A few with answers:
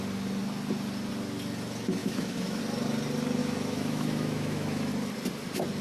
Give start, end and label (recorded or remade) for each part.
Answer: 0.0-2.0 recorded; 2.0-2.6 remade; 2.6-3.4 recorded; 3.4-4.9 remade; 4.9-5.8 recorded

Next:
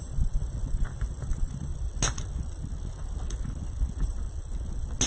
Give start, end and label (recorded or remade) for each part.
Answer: 0.0-1.7 remade; 1.7-5.1 recorded